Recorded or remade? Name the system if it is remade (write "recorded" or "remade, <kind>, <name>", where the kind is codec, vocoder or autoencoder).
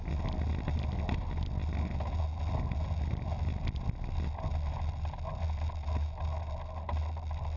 recorded